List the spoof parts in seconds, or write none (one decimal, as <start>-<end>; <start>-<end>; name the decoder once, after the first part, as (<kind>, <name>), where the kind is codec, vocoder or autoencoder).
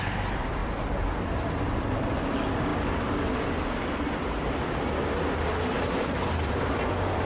none